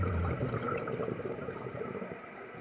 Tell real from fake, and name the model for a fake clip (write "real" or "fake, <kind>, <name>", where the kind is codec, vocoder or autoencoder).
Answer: fake, vocoder, BigVGAN v2